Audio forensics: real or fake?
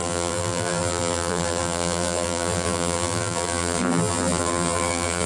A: fake